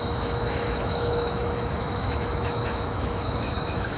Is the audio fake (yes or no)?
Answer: yes